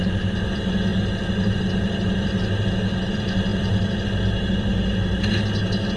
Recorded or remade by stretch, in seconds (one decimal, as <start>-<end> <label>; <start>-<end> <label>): 0.0-6.0 recorded

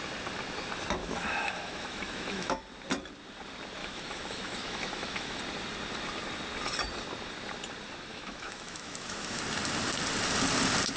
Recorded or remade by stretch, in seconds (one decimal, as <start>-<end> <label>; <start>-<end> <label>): 0.0-1.0 recorded; 1.0-2.6 remade; 2.6-3.8 recorded; 3.8-5.4 remade; 5.4-8.1 recorded; 8.1-9.4 remade; 9.4-11.0 recorded

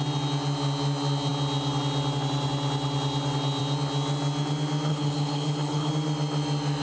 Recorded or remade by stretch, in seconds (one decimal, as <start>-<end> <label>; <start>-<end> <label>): 0.0-4.9 recorded; 4.9-5.9 remade; 5.9-6.8 recorded

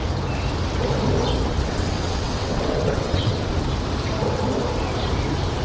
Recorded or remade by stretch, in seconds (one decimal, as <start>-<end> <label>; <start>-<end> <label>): 0.0-1.5 recorded; 1.5-3.5 remade; 3.5-5.6 recorded

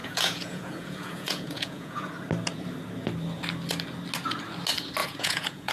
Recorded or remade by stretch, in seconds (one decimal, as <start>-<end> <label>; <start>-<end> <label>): 0.0-2.1 remade; 2.1-5.0 recorded; 5.0-5.7 remade

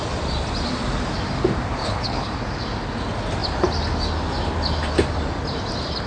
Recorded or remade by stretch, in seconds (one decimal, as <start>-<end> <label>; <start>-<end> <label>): 0.0-1.8 recorded; 1.8-2.3 remade; 2.3-6.1 recorded